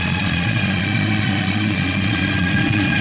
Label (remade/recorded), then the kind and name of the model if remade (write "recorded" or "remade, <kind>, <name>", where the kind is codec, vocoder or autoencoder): remade, vocoder, Vocos